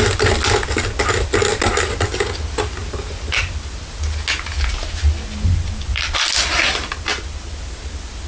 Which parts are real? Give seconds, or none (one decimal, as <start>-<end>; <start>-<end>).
0.0-8.3